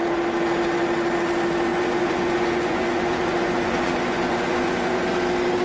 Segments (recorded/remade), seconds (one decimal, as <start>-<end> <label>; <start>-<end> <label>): 0.0-1.7 recorded; 1.7-5.1 remade; 5.1-5.6 recorded